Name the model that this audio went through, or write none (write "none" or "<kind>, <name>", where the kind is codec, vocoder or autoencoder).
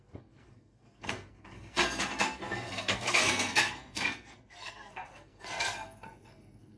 codec, SNAC